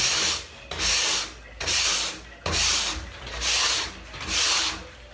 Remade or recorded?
recorded